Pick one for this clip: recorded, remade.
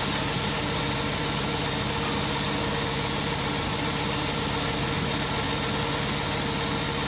recorded